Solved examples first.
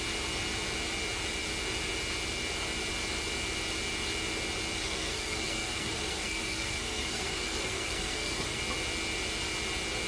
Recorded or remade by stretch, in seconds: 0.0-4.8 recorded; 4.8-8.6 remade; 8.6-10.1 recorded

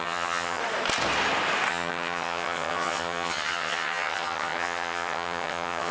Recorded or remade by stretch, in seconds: 0.0-0.6 remade; 0.6-1.7 recorded; 1.7-5.9 remade

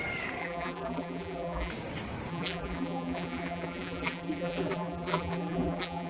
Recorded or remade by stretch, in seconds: 0.0-0.4 recorded; 0.4-1.7 remade; 1.7-2.3 recorded; 2.3-6.1 remade

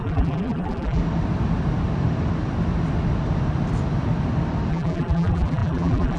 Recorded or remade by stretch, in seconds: 0.0-1.0 remade; 1.0-4.7 recorded; 4.7-6.2 remade

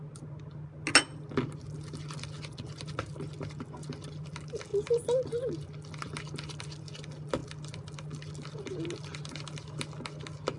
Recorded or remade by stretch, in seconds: 0.0-10.6 recorded